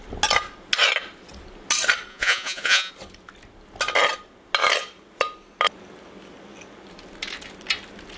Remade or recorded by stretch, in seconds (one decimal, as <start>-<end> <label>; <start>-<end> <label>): 0.0-2.1 recorded; 2.1-2.9 remade; 2.9-8.2 recorded